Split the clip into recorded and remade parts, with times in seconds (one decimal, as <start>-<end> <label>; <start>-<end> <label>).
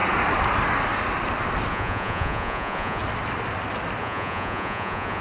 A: 0.0-1.7 recorded; 1.7-3.0 remade; 3.0-4.0 recorded; 4.0-5.2 remade